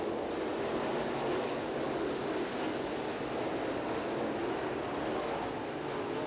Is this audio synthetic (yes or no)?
no